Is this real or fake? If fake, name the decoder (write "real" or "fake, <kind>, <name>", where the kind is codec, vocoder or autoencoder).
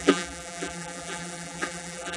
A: fake, vocoder, BigVGAN v2